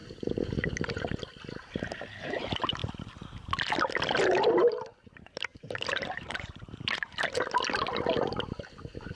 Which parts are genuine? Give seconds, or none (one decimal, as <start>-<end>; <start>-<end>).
1.2-2.8; 3.5-5.5; 7.2-9.1